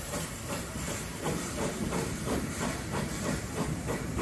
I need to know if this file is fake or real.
fake